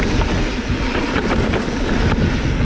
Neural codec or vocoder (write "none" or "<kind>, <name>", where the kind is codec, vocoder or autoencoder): none